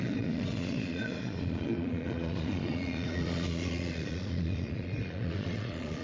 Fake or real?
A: fake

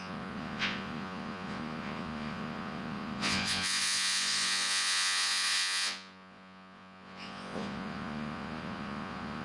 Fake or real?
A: fake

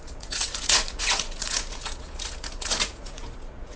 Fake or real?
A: fake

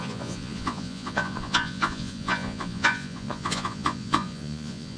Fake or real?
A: fake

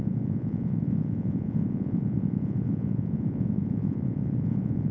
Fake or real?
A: fake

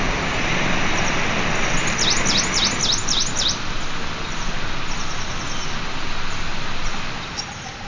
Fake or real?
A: real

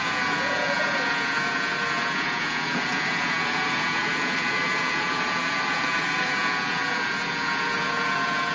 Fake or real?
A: fake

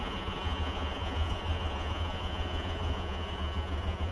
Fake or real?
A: fake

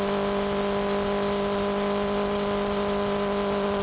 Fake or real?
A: real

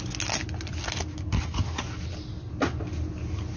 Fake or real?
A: real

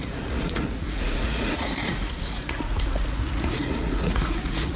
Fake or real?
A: fake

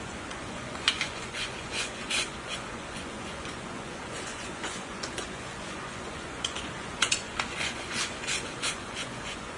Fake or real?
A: fake